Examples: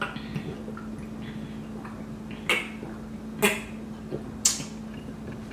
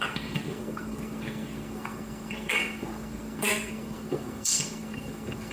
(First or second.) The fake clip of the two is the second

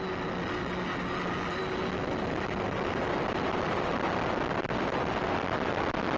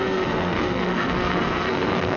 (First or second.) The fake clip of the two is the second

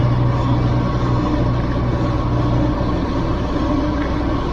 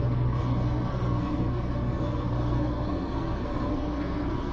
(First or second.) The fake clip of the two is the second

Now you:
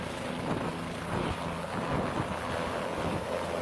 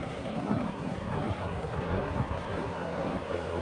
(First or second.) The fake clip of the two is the second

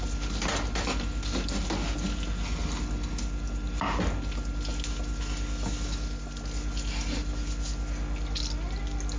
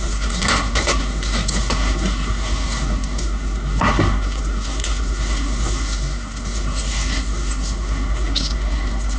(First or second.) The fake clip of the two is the second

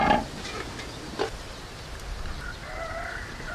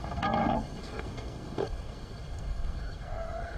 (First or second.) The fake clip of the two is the second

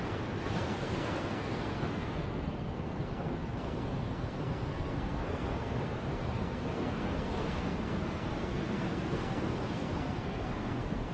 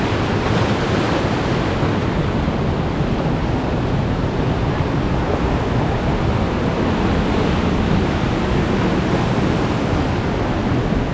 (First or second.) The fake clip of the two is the first